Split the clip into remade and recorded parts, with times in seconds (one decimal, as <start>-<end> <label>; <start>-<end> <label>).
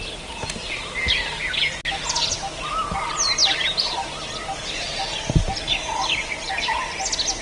0.0-7.4 recorded